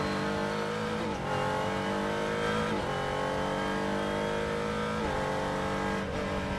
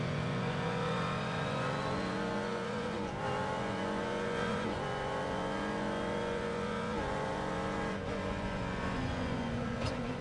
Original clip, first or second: first